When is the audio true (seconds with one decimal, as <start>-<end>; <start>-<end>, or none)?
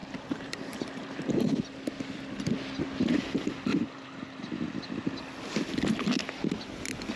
0.0-7.2